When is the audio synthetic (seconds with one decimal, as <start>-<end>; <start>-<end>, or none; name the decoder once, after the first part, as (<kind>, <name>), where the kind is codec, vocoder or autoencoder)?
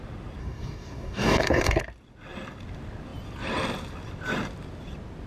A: 0.4-1.8 (codec, DAC)